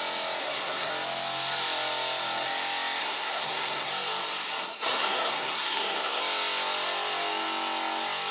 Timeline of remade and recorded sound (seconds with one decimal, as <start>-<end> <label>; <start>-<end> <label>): 0.0-0.4 recorded; 0.4-0.9 remade; 0.9-3.0 recorded; 3.0-3.9 remade; 3.9-4.7 recorded; 4.7-6.2 remade; 6.2-8.3 recorded